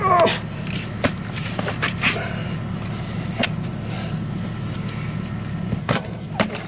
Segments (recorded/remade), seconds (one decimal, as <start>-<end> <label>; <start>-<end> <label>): 0.0-5.8 recorded; 5.8-6.3 remade; 6.3-6.7 recorded